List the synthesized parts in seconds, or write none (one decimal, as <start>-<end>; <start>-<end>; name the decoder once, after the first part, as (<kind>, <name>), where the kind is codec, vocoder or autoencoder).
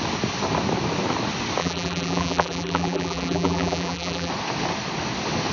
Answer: 1.6-4.3 (vocoder, BigVGAN v2)